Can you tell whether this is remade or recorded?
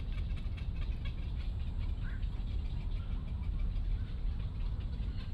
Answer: recorded